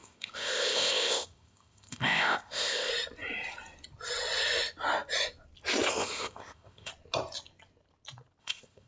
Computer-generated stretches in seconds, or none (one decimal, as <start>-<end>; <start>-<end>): 0.0-2.9; 5.9-6.9; 8.4-8.9

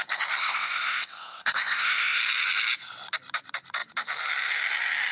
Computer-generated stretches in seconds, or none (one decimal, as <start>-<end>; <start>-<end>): 0.4-2.2

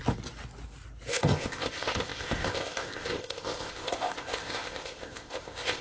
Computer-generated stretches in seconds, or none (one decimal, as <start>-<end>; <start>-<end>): 1.1-5.8

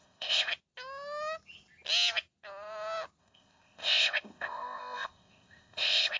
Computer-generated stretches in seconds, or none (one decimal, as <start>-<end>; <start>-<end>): 0.0-0.5; 3.2-6.2

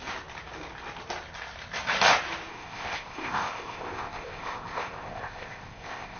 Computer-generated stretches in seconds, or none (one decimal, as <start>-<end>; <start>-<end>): 2.5-6.2

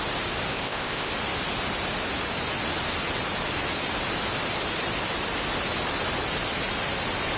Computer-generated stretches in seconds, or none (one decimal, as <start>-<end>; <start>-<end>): 0.5-1.1

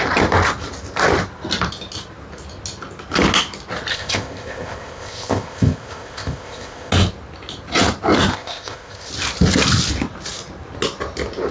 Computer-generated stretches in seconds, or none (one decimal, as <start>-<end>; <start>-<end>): 3.9-6.9; 8.3-9.1

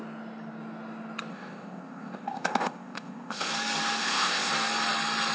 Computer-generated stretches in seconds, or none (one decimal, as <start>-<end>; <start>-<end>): 1.3-3.5; 4.0-4.5